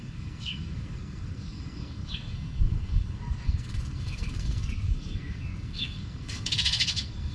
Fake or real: fake